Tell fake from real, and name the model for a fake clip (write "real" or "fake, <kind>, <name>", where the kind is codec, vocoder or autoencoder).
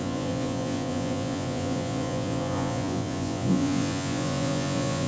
fake, vocoder, Vocos